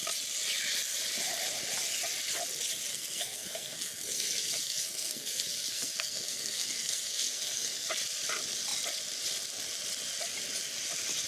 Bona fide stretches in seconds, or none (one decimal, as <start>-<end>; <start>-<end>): 0.0-2.9; 7.9-11.3